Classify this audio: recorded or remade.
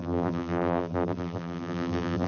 remade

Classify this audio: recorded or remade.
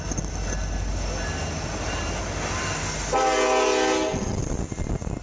recorded